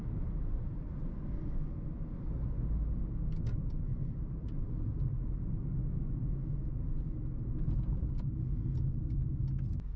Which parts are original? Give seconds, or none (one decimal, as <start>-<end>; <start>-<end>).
1.4-3.9; 4.6-10.0